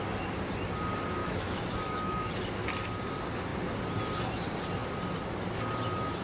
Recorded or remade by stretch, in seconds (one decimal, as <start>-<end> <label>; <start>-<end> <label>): 0.0-1.2 recorded; 1.2-2.3 remade; 2.3-6.2 recorded